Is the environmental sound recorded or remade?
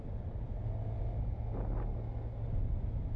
recorded